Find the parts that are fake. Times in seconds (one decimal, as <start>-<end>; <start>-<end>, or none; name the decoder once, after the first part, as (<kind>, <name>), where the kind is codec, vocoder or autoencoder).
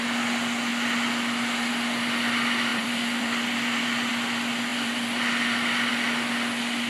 2.7-4.1 (vocoder, BigVGAN v2); 4.7-5.9